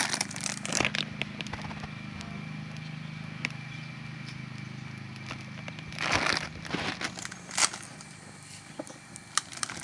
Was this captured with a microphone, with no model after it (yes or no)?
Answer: yes